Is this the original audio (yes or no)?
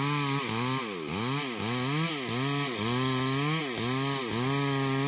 yes